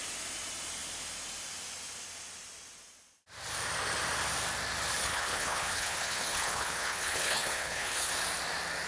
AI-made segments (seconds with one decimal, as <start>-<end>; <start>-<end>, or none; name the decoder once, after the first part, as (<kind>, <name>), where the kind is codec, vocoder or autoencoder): 5.0-8.1 (codec, HILCodec)